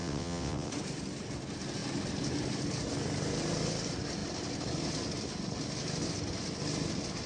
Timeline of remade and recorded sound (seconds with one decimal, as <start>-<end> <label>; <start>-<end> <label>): 0.0-0.7 remade; 0.7-7.3 recorded